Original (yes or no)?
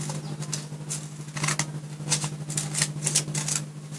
yes